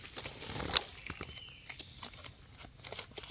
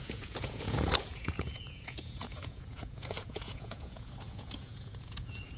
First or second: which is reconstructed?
second